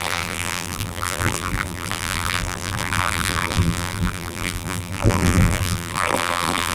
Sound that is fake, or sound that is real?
fake